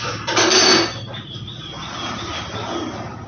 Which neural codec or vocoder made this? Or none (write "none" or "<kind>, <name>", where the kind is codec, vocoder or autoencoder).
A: none